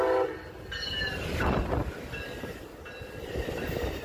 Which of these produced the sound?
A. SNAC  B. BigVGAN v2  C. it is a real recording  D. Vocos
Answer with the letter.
C